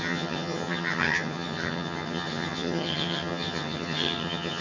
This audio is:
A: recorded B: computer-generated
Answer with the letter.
B